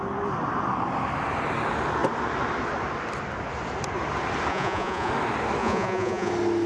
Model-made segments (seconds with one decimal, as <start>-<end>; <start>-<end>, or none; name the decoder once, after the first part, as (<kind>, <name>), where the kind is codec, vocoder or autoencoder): 4.5-5.1 (vocoder, Vocos); 5.6-6.3